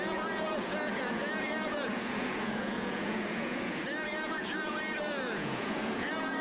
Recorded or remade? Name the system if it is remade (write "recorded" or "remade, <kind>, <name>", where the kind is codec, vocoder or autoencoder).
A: remade, vocoder, Vocos